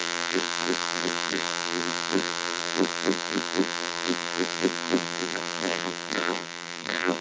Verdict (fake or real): fake